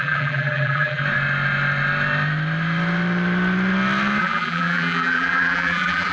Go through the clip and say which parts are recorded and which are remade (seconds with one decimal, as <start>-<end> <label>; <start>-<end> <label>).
0.0-1.0 remade; 1.0-4.2 recorded; 4.2-6.1 remade